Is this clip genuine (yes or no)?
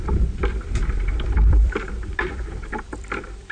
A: no